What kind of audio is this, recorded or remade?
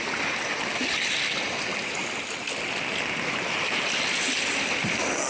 recorded